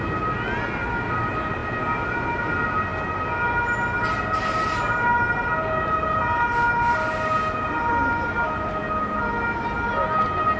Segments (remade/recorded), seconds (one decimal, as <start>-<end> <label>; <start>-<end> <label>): 0.0-10.6 recorded